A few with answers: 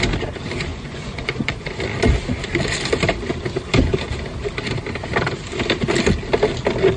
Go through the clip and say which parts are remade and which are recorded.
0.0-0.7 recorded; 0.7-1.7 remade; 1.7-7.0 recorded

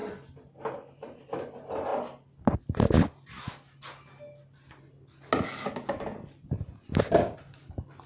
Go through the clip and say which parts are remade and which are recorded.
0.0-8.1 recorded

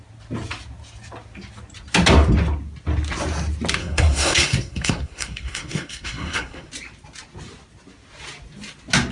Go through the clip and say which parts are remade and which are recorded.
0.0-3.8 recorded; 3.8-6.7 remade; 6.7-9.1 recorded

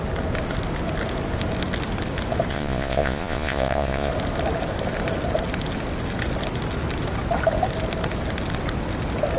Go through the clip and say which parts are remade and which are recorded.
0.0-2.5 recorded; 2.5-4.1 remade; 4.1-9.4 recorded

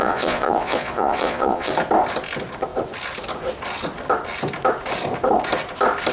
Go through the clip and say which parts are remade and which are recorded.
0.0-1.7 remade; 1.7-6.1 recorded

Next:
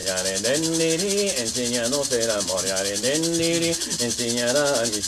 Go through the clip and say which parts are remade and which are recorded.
0.0-5.1 recorded